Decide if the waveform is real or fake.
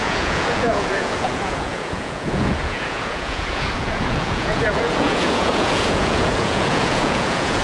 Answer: fake